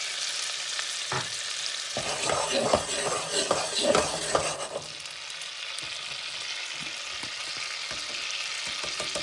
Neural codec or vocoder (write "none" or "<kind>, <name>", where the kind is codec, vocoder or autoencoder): none